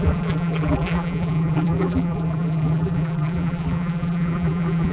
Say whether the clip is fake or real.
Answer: fake